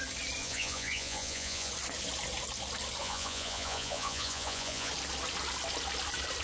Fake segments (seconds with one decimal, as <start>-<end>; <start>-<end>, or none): 0.4-1.7; 3.0-4.9